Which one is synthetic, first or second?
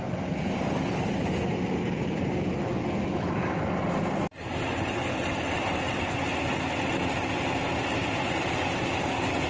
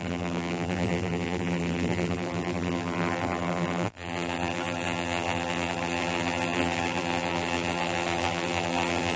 second